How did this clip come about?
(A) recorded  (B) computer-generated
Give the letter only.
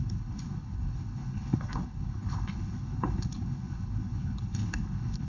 B